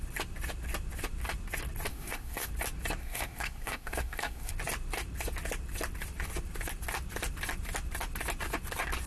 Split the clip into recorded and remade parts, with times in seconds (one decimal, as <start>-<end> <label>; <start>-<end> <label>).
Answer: 0.0-1.9 recorded; 1.9-2.5 remade; 2.5-3.0 recorded; 3.0-4.5 remade; 4.5-9.1 recorded